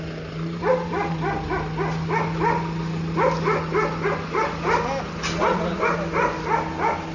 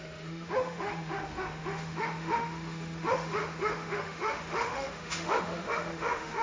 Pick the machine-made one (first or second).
second